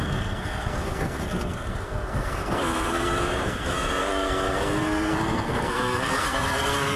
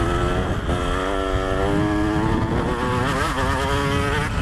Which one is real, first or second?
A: second